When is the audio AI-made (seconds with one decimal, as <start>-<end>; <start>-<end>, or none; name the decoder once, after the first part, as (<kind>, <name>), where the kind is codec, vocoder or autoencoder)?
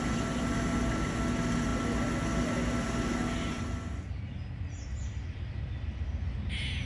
none